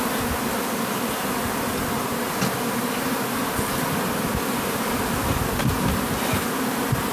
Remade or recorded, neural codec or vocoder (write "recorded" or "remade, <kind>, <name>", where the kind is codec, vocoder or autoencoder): recorded